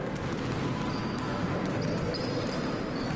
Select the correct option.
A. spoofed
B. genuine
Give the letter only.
B